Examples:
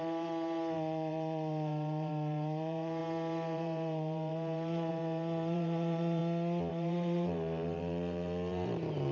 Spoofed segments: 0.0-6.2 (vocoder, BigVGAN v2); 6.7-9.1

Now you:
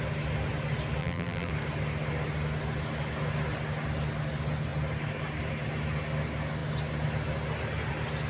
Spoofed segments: 1.0-1.5 (vocoder, BigVGAN v2)

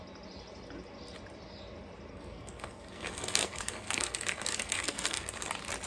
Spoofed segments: 2.1-5.5 (codec, SNAC)